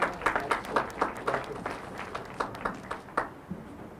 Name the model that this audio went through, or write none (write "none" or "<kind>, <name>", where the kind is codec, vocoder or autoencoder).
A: none